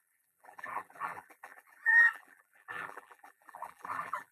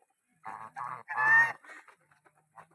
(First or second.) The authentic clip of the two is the second